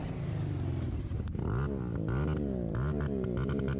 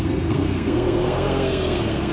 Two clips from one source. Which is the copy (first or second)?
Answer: second